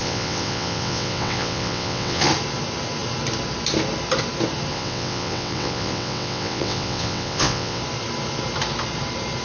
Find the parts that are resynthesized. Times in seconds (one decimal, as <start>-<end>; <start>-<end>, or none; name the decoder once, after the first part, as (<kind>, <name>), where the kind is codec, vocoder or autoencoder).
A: 0.0-2.3 (vocoder, WaveNeXt); 4.7-7.8